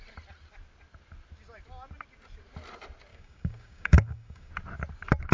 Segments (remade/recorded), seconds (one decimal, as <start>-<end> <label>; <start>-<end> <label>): 0.0-3.1 recorded; 3.1-4.5 remade; 4.5-5.3 recorded